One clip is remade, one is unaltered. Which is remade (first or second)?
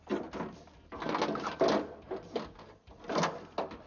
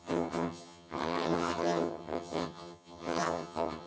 second